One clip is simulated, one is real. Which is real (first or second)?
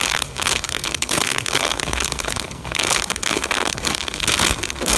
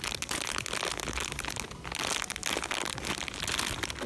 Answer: second